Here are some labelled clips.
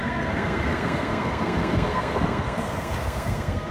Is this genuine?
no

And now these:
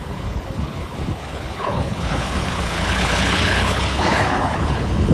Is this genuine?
no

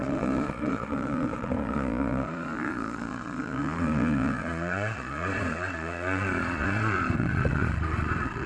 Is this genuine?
no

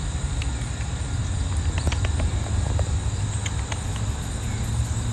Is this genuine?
yes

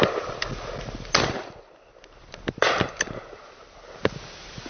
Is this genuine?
yes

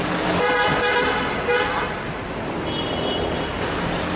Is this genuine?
yes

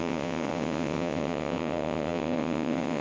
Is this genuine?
no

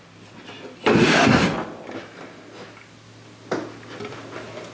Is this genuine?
yes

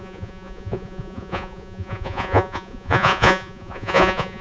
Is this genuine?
no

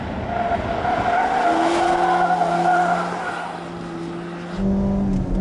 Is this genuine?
yes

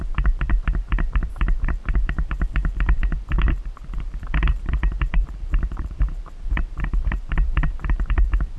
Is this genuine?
no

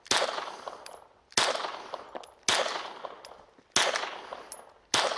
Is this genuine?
yes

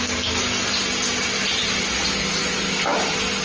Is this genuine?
yes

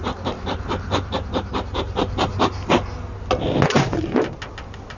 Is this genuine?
yes